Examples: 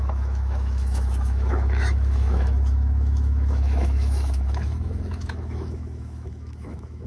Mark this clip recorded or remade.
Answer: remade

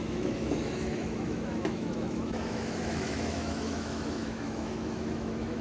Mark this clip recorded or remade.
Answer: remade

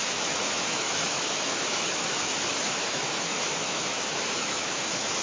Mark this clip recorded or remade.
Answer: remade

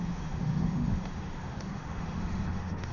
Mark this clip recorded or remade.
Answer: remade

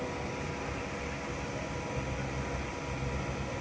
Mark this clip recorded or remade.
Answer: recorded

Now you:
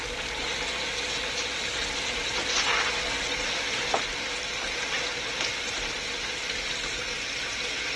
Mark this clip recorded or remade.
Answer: recorded